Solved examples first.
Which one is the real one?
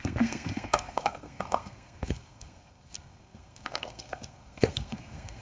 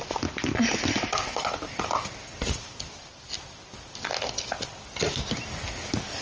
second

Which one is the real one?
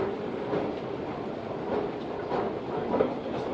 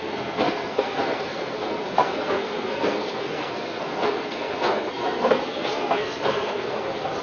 first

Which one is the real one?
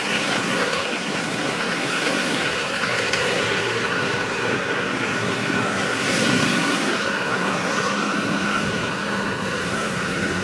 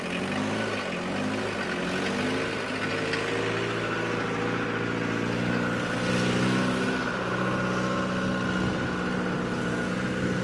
second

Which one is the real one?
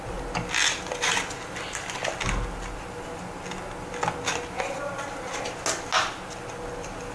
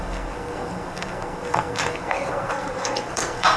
first